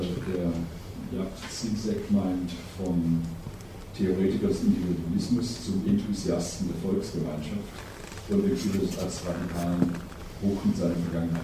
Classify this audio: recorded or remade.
recorded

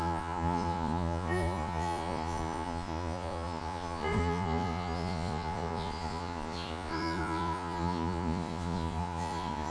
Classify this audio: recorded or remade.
remade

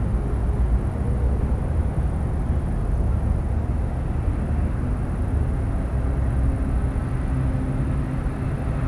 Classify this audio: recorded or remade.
recorded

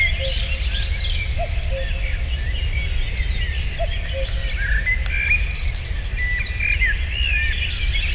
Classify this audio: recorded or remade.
recorded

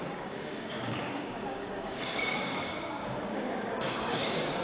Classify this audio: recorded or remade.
remade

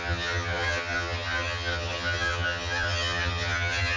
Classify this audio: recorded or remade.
remade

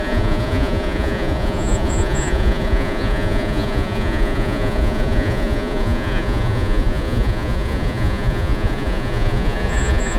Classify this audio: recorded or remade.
remade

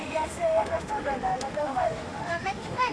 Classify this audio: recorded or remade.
remade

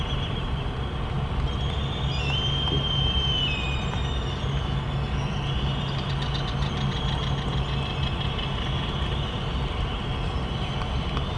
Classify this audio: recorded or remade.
recorded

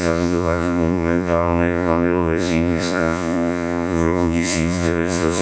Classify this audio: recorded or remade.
remade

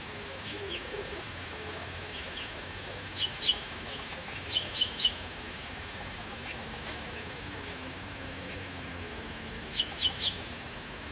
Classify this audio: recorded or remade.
remade